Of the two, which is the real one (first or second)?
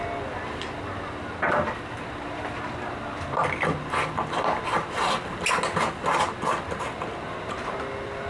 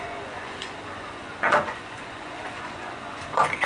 first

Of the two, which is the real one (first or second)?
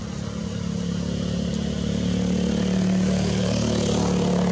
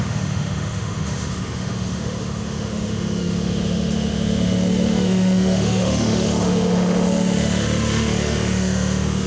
first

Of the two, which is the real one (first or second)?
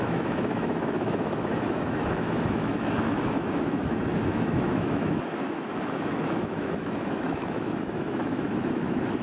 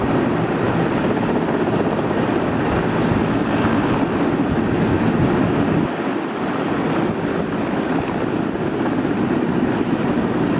second